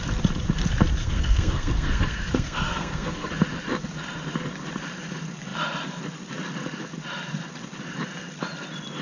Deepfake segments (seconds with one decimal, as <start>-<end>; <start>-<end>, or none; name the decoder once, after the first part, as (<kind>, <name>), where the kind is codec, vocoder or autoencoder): 1.0-3.3 (codec, SNAC)